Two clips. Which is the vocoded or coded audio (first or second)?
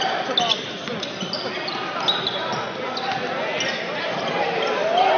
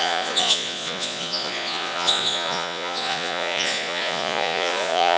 second